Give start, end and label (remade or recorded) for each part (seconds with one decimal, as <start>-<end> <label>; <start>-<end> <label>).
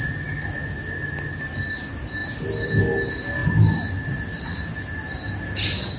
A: 0.0-2.2 recorded; 2.2-2.8 remade; 2.8-3.4 recorded; 3.4-5.3 remade; 5.3-6.0 recorded